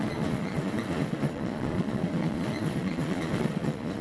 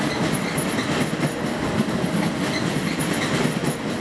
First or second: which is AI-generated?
first